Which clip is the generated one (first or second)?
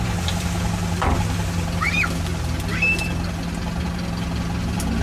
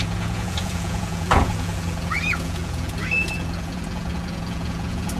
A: second